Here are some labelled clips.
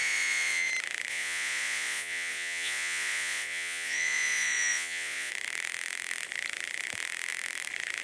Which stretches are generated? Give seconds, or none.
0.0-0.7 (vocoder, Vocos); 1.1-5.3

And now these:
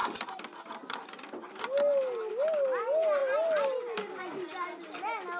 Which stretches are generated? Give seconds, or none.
none

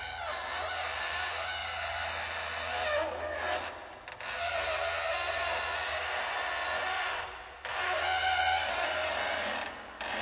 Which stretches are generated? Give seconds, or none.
none

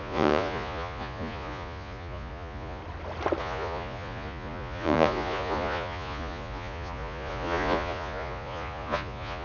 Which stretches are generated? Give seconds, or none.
0.0-2.8 (vocoder, Vocos); 3.4-9.4

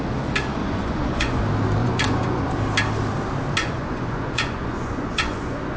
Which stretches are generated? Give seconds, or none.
0.6-1.4 (vocoder, Vocos); 1.8-2.5; 3.6-5.8

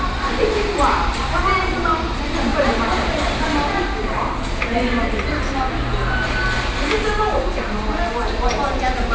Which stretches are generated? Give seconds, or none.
none